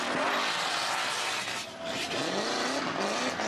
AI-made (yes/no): no